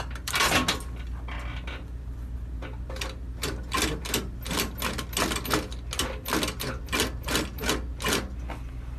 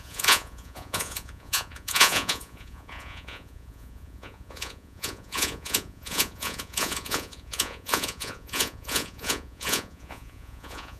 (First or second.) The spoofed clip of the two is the second